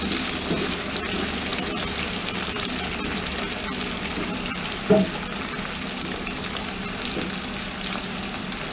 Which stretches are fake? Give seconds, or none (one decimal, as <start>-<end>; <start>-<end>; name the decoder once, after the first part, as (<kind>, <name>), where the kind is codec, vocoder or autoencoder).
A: none